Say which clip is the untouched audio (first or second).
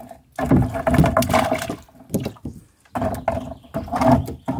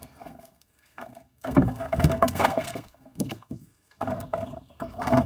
first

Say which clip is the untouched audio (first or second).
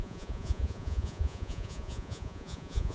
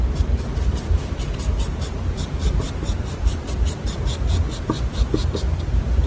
second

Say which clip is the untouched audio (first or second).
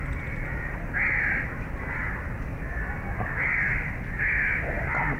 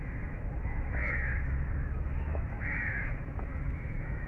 first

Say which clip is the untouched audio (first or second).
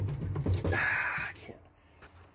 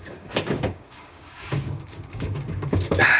first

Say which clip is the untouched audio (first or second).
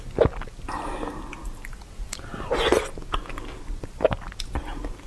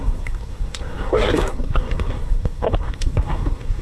first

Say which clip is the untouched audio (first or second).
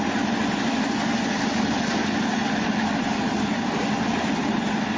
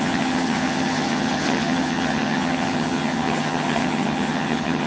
first